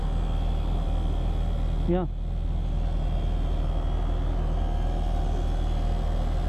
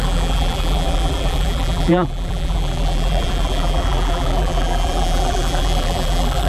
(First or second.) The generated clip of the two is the second